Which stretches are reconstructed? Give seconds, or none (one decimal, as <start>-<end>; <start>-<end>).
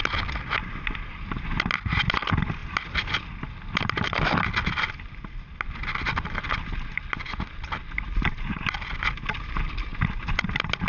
none